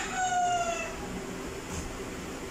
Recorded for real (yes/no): yes